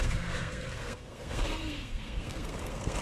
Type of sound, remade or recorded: remade